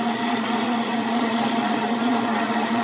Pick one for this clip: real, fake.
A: fake